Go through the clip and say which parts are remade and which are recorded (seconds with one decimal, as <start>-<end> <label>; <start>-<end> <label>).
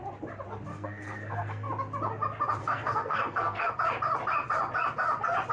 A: 0.0-0.7 recorded; 0.7-1.7 remade; 1.7-2.6 recorded; 2.6-3.7 remade; 3.7-5.5 recorded